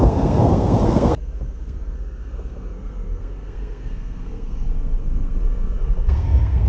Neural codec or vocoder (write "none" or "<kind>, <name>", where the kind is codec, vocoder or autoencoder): codec, SNAC